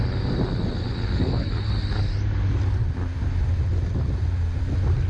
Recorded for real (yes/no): yes